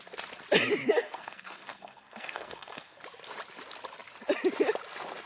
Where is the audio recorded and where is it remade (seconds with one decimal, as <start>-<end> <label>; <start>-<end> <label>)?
0.0-0.8 recorded; 0.8-3.0 remade; 3.0-5.3 recorded